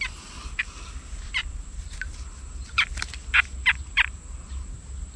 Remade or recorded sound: recorded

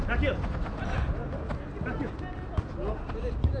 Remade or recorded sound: recorded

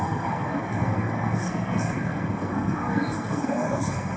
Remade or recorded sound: remade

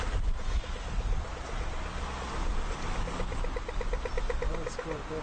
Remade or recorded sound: recorded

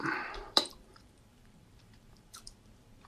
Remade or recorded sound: remade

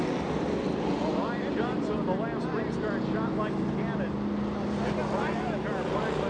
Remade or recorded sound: recorded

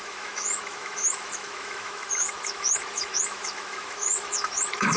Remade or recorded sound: remade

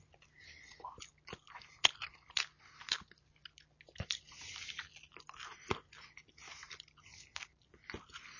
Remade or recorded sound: recorded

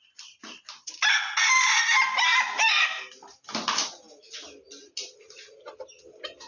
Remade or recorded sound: recorded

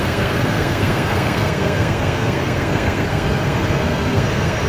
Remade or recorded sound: remade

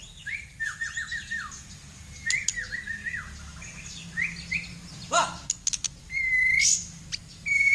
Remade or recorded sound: recorded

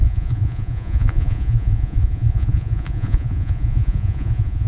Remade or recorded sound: remade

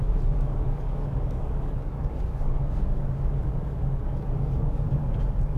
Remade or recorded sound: remade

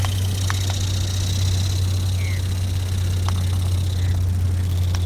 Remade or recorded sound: recorded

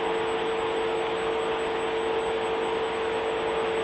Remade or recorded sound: recorded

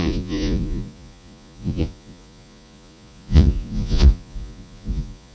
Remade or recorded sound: remade